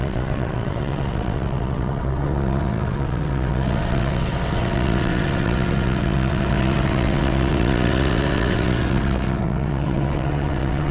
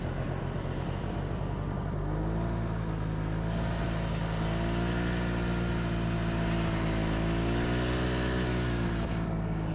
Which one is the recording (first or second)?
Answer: second